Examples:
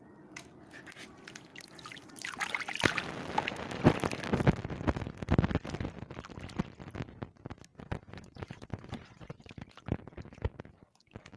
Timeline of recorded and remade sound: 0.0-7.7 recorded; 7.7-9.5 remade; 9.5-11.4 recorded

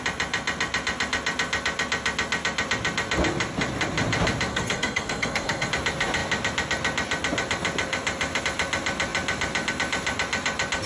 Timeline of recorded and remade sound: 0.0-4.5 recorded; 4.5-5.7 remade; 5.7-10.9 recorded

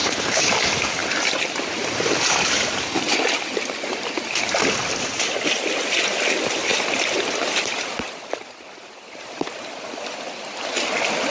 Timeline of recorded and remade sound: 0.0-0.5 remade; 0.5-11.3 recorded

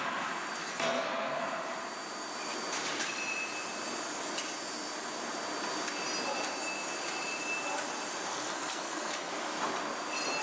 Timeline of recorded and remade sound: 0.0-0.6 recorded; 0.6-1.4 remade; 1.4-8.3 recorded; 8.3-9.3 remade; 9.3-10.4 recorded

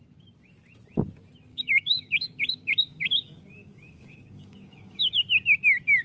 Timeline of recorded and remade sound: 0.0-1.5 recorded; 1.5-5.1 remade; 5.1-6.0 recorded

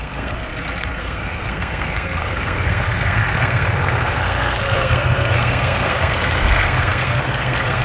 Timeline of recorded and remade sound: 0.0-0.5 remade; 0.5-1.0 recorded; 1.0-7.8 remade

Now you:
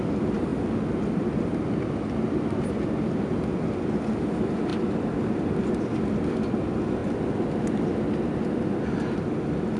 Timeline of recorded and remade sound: 0.0-9.8 recorded

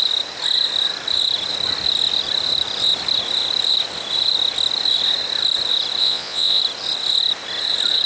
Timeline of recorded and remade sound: 0.0-6.0 recorded; 6.0-6.6 remade; 6.6-8.1 recorded